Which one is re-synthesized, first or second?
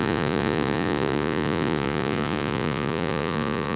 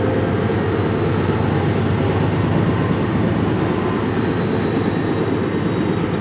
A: first